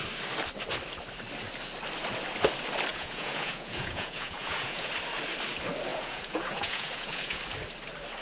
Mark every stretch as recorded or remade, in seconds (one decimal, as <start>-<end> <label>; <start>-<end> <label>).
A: 0.0-2.9 recorded; 2.9-4.9 remade; 4.9-5.9 recorded; 5.9-7.4 remade; 7.4-8.2 recorded